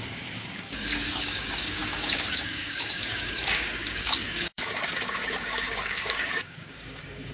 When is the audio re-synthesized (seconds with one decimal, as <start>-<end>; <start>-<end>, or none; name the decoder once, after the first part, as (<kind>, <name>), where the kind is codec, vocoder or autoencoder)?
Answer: 0.0-7.3 (codec, DAC)